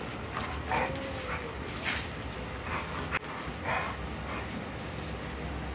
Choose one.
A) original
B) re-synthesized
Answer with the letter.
A